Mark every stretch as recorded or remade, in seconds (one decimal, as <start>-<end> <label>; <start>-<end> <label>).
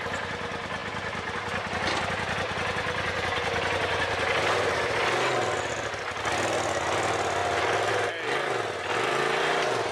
0.0-9.9 recorded